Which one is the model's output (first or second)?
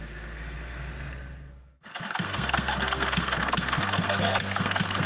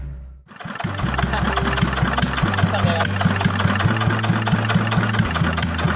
first